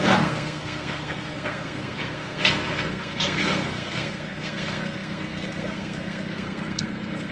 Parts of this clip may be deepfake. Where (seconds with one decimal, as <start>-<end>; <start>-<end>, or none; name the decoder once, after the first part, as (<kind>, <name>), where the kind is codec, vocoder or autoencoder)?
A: 0.0-7.3 (codec, SNAC)